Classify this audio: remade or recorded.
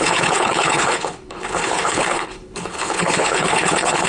remade